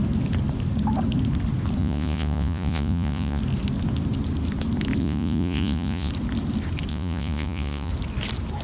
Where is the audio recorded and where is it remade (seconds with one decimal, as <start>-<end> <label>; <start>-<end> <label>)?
0.0-1.8 recorded; 1.8-3.4 remade; 3.4-5.0 recorded; 5.0-6.1 remade; 6.1-6.9 recorded; 6.9-7.9 remade; 7.9-8.6 recorded